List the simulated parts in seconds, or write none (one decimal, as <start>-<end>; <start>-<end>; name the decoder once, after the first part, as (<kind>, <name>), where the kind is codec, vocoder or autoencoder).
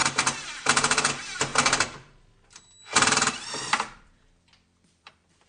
0.0-1.5 (vocoder, BigVGAN v2); 3.5-5.5